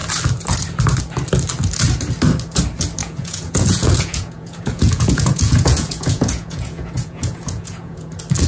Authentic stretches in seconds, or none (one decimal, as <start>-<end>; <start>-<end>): 0.0-3.0; 8.1-8.5